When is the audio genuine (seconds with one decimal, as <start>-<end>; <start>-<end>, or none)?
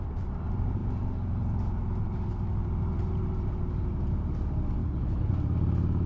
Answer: 0.0-4.8; 5.3-6.1